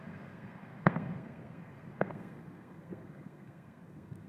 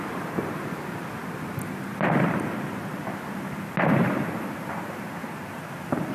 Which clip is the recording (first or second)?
second